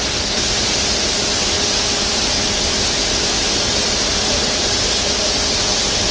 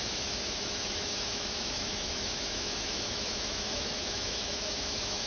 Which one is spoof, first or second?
second